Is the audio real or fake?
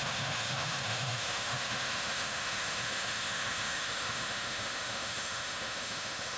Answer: fake